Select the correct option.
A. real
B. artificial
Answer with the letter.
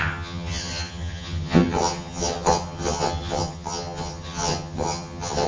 B